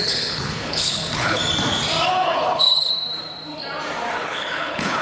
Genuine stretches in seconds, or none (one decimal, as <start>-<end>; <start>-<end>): 1.4-2.1; 2.9-4.1